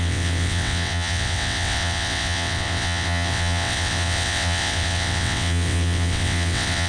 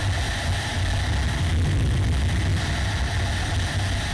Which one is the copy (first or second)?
first